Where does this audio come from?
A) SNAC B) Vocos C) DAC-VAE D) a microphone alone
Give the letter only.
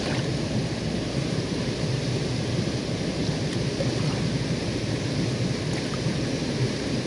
D